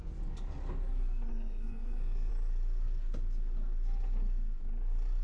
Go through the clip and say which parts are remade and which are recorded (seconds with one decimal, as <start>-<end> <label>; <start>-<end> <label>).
0.0-1.3 recorded; 1.3-2.3 remade; 2.3-5.2 recorded